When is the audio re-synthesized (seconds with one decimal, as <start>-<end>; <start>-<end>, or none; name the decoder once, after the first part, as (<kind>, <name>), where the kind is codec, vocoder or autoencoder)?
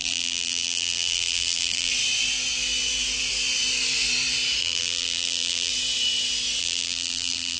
0.0-1.9 (vocoder, BigVGAN v2); 4.6-5.7; 6.6-7.6